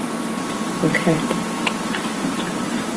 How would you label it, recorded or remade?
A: remade